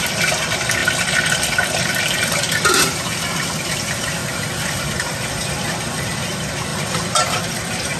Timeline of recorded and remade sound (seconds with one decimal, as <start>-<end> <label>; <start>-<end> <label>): 0.0-4.2 remade; 4.2-4.8 recorded; 4.8-6.7 remade; 6.7-7.2 recorded; 7.2-8.0 remade